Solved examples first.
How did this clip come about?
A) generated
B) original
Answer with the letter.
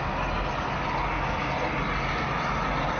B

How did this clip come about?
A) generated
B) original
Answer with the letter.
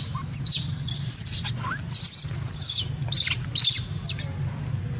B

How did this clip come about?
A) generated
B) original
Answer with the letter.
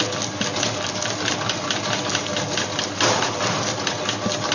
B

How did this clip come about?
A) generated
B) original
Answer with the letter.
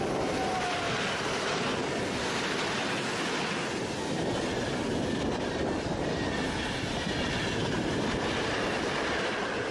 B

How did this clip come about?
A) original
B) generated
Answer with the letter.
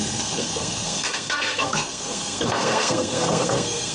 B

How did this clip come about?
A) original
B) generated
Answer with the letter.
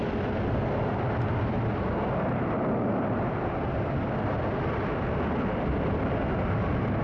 A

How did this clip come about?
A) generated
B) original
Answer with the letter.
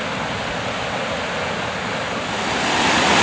B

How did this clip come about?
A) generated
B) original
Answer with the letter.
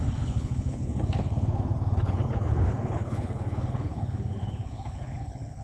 A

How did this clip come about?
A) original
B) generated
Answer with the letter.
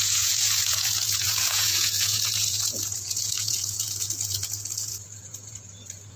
B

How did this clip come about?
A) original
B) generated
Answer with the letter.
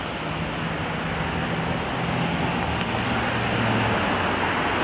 A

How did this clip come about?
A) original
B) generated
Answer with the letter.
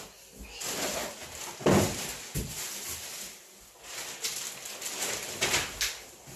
A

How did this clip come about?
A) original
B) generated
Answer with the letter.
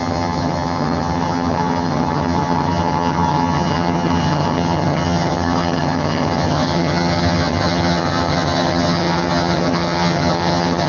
B